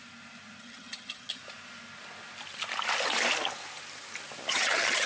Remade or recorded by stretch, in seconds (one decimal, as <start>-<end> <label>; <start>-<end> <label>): 0.0-0.6 recorded; 0.6-1.4 remade; 1.4-4.5 recorded; 4.5-5.1 remade